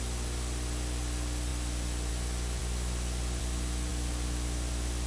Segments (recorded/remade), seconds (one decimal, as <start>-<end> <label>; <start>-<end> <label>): 0.0-5.1 recorded